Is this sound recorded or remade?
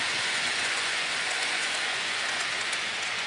remade